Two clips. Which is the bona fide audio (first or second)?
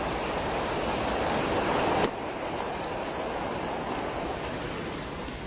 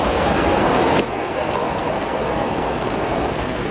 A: first